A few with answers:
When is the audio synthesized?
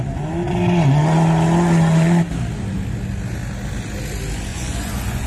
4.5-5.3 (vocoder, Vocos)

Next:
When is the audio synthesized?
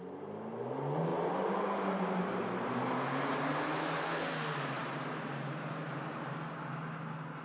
none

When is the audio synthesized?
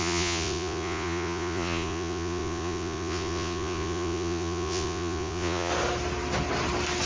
0.0-5.7 (vocoder, Vocos)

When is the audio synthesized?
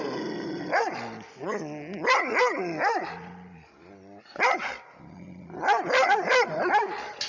none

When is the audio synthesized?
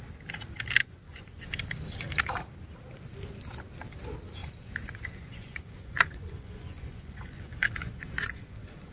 0.8-1.4 (vocoder, Vocos); 4.4-8.9